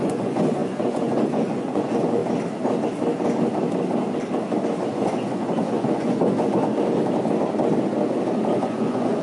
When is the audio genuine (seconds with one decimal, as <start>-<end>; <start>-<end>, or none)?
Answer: 2.2-4.9; 6.7-8.5